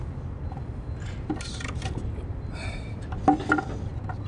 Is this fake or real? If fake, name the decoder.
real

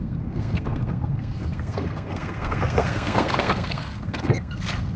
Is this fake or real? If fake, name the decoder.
fake, codec, SNAC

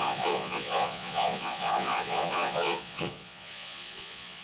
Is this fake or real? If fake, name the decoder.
fake, vocoder, Vocos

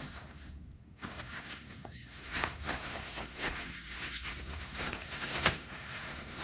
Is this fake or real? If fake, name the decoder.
fake, codec, SNAC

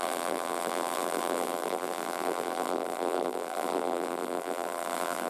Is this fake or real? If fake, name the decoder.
fake, vocoder, BigVGAN v2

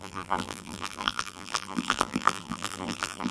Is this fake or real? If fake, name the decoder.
fake, vocoder, BigVGAN v2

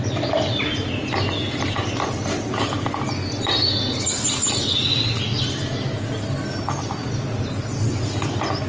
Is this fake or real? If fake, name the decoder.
real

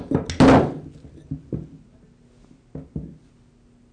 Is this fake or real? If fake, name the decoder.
real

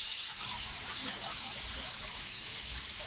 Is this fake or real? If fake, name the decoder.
fake, codec, DAC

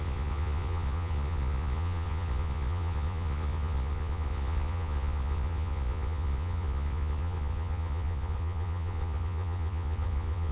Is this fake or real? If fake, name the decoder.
fake, vocoder, Vocos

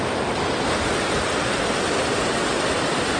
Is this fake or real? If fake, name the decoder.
real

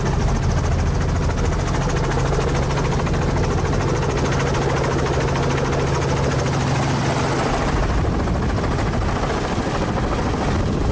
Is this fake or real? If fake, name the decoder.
real